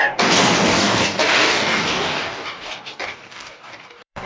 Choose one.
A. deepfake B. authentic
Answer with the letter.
A